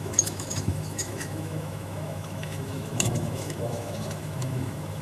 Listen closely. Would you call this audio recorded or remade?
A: remade